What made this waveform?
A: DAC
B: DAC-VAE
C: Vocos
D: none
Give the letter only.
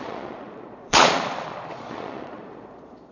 C